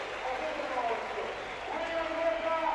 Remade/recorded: recorded